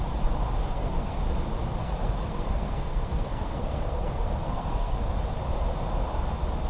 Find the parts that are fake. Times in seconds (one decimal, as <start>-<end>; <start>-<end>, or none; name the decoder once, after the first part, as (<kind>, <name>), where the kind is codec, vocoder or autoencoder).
0.6-1.2 (codec, SNAC); 1.8-5.1